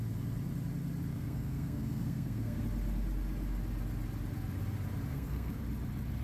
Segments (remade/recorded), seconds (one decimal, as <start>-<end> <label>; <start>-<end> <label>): 0.0-1.1 recorded; 1.1-2.6 remade; 2.6-5.1 recorded; 5.1-5.6 remade; 5.6-6.2 recorded